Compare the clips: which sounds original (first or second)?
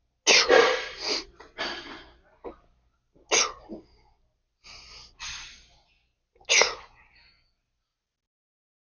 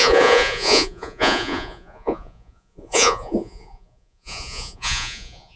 first